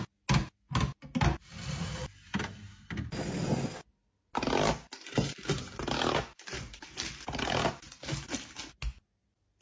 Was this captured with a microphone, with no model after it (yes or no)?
yes